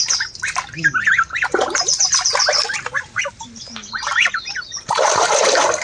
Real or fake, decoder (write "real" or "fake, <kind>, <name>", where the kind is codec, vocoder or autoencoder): real